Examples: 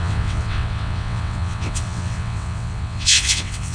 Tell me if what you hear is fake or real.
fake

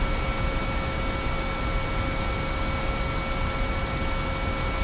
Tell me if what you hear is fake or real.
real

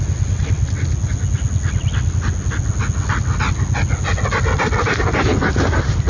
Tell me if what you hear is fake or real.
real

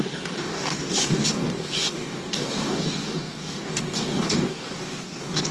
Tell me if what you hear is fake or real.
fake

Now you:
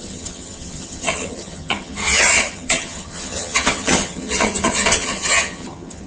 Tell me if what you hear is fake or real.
fake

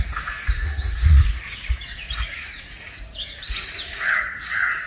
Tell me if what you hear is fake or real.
fake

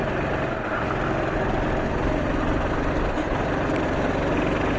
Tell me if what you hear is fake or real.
real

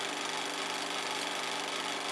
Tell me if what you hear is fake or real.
real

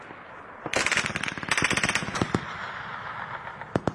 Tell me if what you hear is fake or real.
real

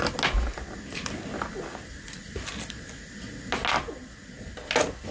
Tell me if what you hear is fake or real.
real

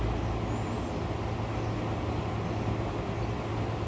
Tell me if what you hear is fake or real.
real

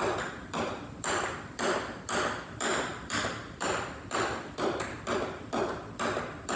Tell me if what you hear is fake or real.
real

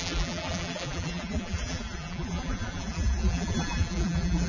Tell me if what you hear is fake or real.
fake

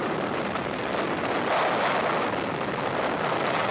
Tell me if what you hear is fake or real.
real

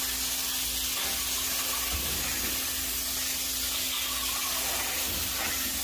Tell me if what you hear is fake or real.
real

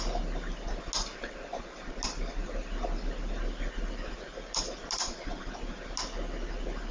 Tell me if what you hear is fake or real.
real